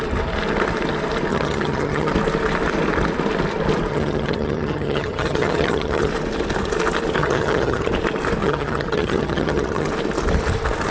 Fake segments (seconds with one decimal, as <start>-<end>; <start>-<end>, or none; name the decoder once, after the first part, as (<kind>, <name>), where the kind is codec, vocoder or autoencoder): 1.3-2.1 (vocoder, HiFi-GAN); 3.9-6.1; 7.2-7.9; 8.4-9.9